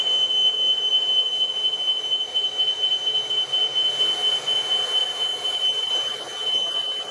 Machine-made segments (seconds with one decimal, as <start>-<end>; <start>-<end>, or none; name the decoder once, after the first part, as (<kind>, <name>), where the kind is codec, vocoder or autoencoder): none